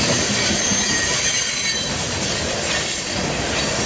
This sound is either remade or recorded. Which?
recorded